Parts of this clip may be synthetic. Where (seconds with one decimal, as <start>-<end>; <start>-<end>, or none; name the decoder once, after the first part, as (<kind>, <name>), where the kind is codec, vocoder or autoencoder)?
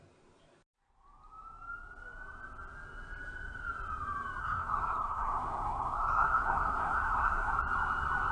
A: 4.4-7.5 (codec, SNAC)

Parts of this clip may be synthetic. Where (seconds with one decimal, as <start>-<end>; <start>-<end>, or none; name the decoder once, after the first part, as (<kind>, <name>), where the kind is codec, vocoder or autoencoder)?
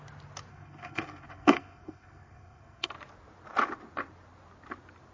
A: 0.5-2.9 (codec, SNAC)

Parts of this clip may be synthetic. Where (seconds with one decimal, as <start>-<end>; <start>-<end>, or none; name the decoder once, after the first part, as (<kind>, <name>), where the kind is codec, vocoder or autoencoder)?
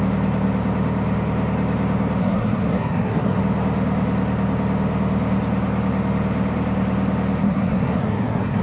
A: 2.2-3.4 (codec, SNAC); 7.4-8.6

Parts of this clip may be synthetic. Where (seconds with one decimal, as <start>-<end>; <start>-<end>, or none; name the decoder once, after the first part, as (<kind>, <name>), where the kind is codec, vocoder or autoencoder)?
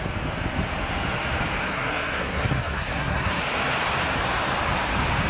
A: 1.7-3.4 (codec, SNAC)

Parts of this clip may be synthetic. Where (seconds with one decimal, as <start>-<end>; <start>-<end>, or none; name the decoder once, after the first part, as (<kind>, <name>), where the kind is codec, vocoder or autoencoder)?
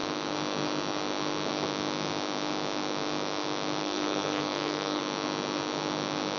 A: 3.8-5.0 (codec, SNAC)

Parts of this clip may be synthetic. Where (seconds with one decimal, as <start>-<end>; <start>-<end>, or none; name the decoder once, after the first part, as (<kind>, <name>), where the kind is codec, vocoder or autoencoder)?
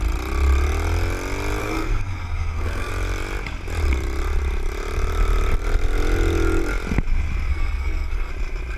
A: 1.6-2.9 (codec, SNAC); 7.5-8.3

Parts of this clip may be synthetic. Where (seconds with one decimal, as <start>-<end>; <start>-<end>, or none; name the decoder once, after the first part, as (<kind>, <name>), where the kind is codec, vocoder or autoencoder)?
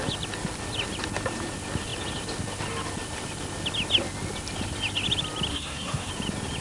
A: 5.5-6.1 (codec, SNAC)